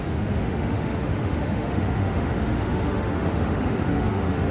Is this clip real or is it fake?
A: fake